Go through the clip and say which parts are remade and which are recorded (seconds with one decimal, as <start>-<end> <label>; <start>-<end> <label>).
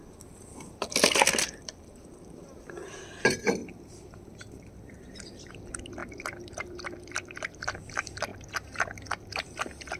0.0-3.6 recorded; 3.6-5.5 remade; 5.5-6.0 recorded; 6.0-7.9 remade; 7.9-10.0 recorded